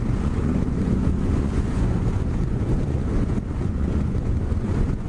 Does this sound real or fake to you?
fake